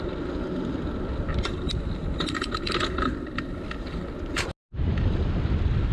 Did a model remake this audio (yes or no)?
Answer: no